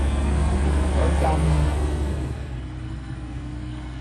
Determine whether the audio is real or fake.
fake